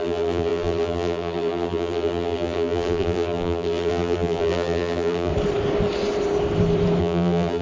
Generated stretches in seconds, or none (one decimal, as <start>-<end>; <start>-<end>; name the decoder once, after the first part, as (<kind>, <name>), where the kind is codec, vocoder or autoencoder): 0.0-5.3 (vocoder, BigVGAN v2); 7.0-7.6